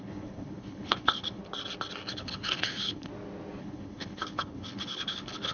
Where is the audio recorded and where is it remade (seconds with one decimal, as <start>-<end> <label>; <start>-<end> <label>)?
0.0-1.4 remade; 1.4-2.1 recorded; 2.1-3.1 remade; 3.1-3.6 recorded; 3.6-5.5 remade